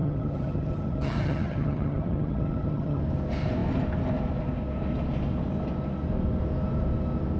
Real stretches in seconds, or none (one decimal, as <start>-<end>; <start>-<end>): 3.0-7.4